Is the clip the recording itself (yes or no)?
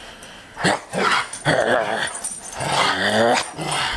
yes